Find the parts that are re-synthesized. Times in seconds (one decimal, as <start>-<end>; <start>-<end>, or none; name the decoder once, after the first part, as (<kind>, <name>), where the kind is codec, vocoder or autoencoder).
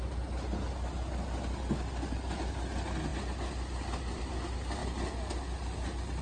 none